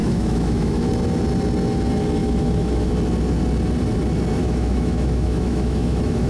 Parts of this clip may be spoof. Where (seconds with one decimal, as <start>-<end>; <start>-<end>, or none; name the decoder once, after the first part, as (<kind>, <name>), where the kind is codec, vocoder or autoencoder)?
0.0-0.9 (autoencoder, DAC-VAE); 2.2-2.9; 4.4-6.3